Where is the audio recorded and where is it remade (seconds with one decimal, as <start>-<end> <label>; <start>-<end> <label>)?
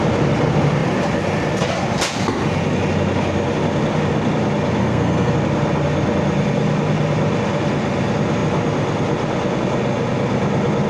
0.0-4.8 recorded; 4.8-5.3 remade; 5.3-10.9 recorded